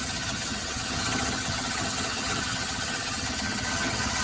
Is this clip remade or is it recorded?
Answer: remade